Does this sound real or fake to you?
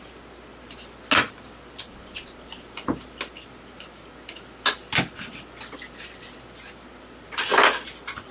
real